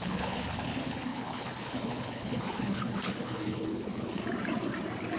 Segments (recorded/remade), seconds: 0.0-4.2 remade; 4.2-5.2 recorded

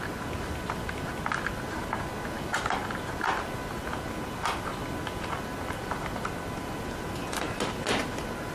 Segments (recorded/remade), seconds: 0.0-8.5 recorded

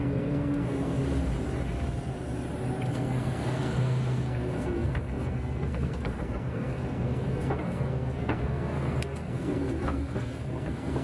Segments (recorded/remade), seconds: 0.0-1.0 remade; 1.0-2.9 recorded; 2.9-11.0 remade

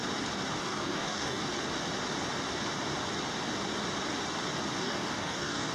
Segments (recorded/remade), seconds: 0.0-0.6 recorded; 0.6-1.4 remade; 1.4-4.8 recorded; 4.8-5.7 remade

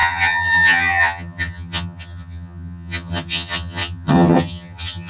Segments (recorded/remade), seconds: 0.0-5.1 remade

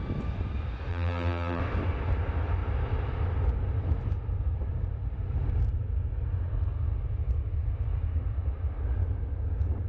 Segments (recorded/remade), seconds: 0.0-0.9 recorded; 0.9-1.6 remade; 1.6-9.9 recorded

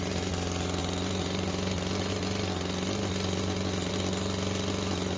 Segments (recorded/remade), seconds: 0.0-5.2 recorded